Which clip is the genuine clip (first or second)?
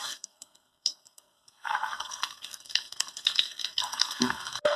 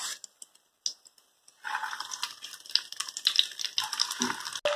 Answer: second